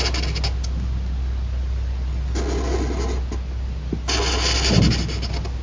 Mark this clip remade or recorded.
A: recorded